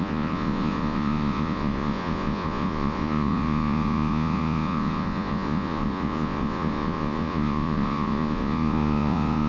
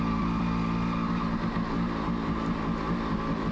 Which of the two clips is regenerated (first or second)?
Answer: first